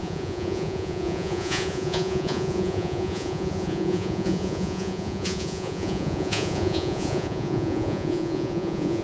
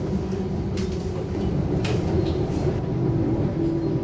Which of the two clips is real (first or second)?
second